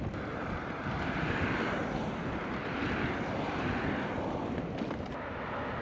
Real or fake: real